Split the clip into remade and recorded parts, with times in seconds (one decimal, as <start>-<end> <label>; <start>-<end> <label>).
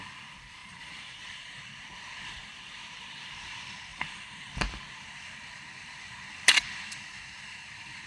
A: 0.0-0.6 recorded; 0.6-1.6 remade; 1.6-3.9 recorded; 3.9-4.5 remade; 4.5-8.1 recorded